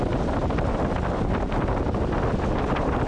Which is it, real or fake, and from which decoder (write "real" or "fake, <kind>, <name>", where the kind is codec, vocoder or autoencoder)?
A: real